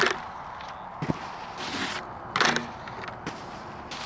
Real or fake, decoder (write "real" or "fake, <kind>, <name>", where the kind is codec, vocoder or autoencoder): real